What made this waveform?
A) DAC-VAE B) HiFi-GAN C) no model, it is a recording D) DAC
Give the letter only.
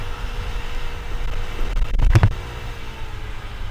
C